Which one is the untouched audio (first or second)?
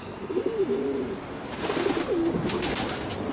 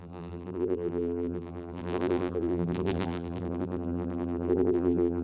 first